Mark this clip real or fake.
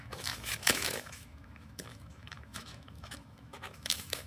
fake